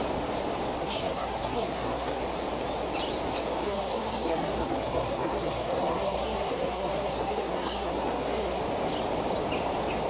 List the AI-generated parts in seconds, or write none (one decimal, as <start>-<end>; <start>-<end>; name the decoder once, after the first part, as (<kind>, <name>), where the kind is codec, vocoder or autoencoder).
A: 0.8-2.2 (codec, SNAC); 3.6-8.6